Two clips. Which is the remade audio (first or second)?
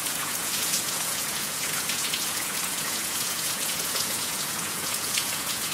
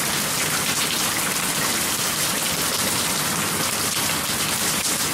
first